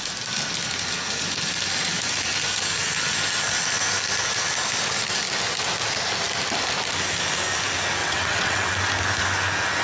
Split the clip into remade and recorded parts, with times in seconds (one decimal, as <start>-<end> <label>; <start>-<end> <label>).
0.0-8.0 recorded; 8.0-8.7 remade; 8.7-9.8 recorded